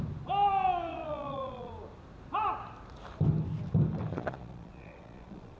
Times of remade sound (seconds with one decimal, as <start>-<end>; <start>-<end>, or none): 0.9-1.7; 4.1-5.6